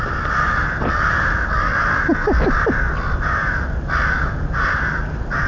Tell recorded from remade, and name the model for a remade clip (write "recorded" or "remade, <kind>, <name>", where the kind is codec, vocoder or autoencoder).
recorded